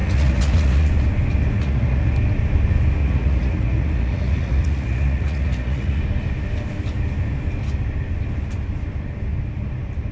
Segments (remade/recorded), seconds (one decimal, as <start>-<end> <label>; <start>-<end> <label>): 0.0-0.9 remade; 0.9-1.6 recorded; 1.6-2.1 remade; 2.1-3.0 recorded; 3.0-6.0 remade; 6.0-10.1 recorded